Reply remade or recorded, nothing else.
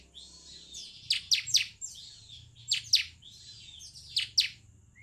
recorded